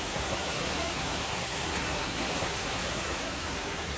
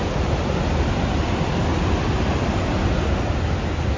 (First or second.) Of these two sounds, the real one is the second